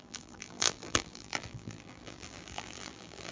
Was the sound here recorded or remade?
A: remade